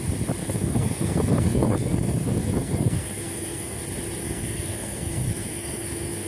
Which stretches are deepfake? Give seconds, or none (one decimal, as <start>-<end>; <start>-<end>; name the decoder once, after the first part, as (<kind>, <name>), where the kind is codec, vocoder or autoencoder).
0.4-3.8 (codec, SNAC); 4.2-6.3